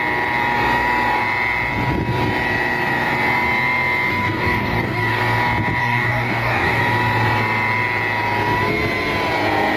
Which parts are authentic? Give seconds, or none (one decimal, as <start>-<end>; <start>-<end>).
0.0-4.1; 5.2-5.8; 6.8-9.8